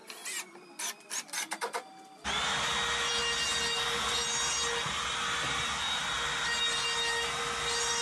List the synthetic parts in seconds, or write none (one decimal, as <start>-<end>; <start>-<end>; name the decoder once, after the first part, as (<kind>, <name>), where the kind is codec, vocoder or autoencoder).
none

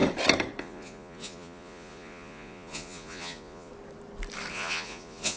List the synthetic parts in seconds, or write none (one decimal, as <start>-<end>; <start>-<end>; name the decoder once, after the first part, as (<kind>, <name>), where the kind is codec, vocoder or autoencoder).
0.6-3.7 (vocoder, Vocos); 4.5-5.4

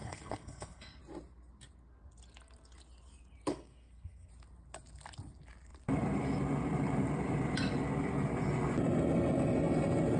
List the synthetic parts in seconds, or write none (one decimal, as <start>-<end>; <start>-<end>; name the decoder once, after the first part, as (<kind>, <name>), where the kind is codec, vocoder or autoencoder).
0.0-1.0 (codec, SNAC); 3.5-4.3